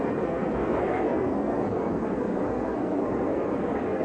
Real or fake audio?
fake